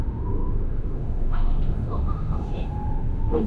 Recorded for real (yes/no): no